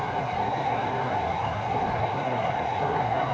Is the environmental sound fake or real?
fake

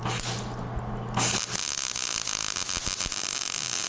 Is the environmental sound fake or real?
real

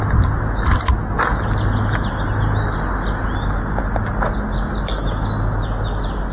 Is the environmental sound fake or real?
real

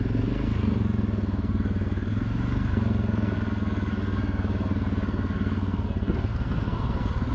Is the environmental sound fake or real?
fake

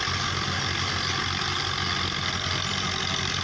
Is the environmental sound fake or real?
real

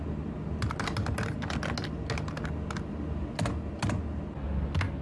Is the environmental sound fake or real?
real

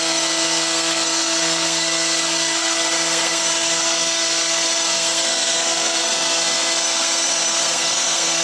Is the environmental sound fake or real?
fake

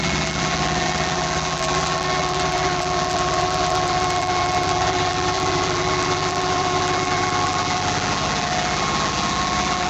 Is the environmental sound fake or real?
fake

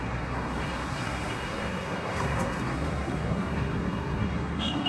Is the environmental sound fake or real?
fake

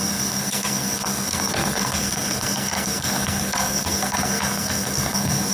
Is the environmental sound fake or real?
fake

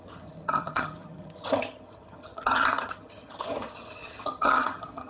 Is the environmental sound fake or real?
fake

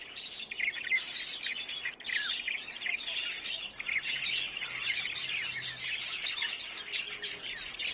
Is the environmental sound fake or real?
real